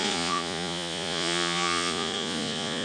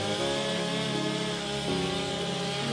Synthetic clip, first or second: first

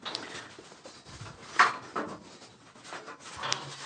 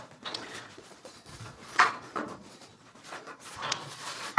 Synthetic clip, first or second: second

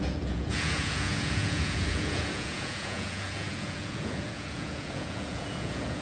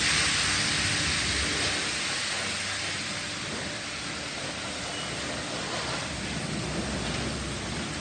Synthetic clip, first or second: first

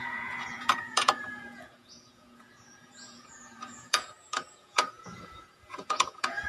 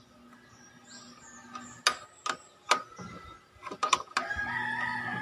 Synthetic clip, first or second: first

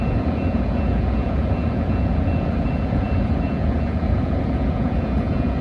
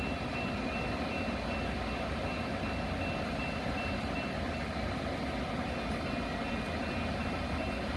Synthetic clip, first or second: first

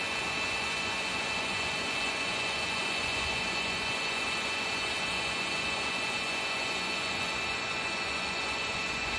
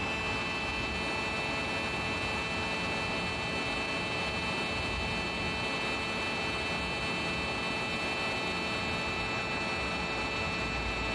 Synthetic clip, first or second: first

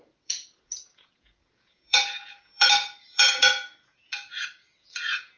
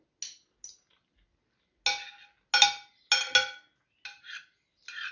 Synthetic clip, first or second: first